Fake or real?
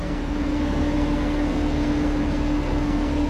fake